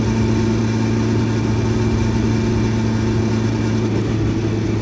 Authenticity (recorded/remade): recorded